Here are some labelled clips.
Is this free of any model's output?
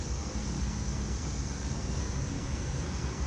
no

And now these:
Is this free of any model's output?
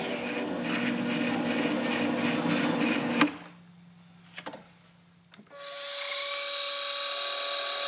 yes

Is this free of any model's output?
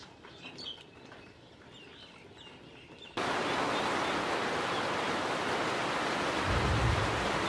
yes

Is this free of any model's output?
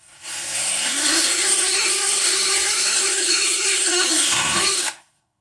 no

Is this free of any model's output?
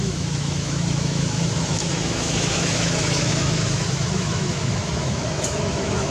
no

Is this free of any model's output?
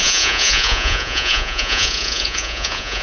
no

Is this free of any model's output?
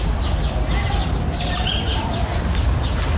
yes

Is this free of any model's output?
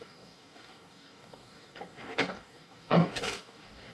no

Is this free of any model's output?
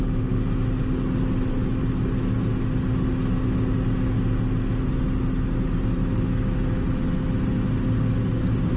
yes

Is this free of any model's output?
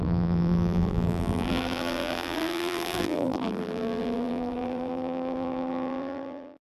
no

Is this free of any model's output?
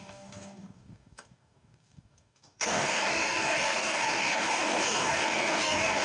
no